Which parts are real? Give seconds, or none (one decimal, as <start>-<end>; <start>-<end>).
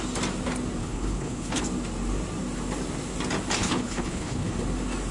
0.0-0.8; 1.6-3.6; 4.5-5.1